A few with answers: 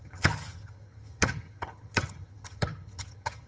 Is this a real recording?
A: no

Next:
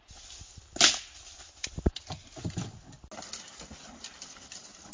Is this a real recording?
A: yes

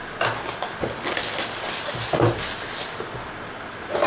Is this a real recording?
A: yes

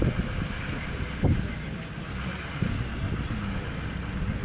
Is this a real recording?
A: yes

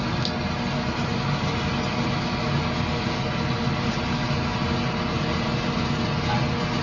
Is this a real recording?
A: yes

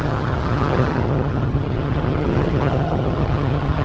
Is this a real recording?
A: no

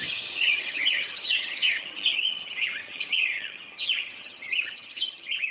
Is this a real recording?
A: no